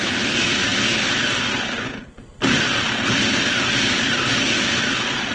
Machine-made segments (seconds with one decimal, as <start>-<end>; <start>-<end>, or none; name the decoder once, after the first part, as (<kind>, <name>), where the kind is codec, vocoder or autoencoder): none